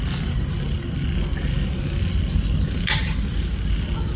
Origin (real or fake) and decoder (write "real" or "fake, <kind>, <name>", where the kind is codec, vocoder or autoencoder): real